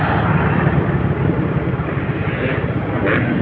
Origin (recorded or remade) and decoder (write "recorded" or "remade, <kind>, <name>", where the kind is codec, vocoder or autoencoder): recorded